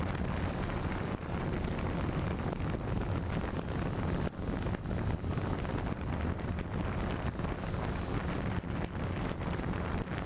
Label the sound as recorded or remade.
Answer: recorded